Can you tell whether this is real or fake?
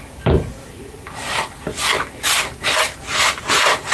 real